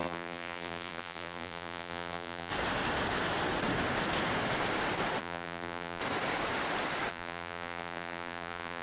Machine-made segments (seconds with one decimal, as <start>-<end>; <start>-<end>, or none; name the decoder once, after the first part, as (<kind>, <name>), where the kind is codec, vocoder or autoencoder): 0.0-2.5 (vocoder, BigVGAN v2); 5.2-6.0; 7.1-8.8